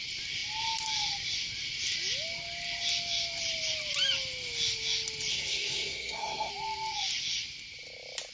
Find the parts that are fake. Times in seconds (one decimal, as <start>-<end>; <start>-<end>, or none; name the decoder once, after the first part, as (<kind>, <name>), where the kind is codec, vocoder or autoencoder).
5.3-6.5 (codec, SNAC)